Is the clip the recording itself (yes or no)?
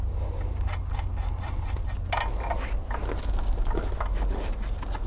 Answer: yes